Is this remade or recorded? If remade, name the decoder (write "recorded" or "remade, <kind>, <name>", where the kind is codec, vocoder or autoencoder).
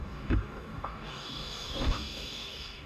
remade, codec, DAC